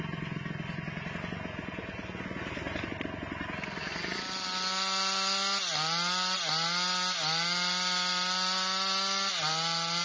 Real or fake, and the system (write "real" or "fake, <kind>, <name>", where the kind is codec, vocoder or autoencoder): real